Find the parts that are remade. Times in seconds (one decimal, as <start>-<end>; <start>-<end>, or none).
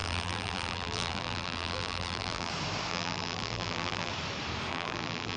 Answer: 0.0-2.5; 2.9-4.1; 4.7-5.4